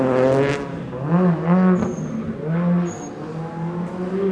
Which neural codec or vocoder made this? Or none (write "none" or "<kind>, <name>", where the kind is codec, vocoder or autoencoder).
none